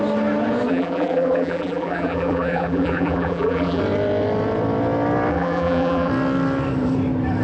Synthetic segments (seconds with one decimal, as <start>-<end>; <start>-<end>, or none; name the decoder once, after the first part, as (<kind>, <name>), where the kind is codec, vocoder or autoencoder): 0.7-3.8 (vocoder, BigVGAN v2); 5.3-6.1